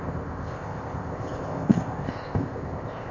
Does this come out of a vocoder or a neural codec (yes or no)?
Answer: yes